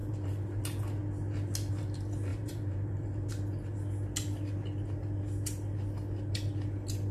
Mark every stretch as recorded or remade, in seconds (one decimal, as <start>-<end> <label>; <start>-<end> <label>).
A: 0.0-0.6 remade; 0.6-2.3 recorded; 2.3-3.3 remade; 3.3-7.1 recorded